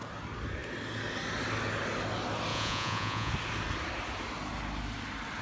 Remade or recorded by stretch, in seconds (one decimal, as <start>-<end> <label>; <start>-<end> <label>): 0.0-2.5 recorded; 2.5-3.3 remade; 3.3-5.4 recorded